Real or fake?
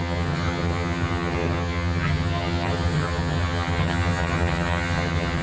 fake